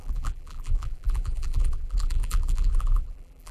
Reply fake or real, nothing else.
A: fake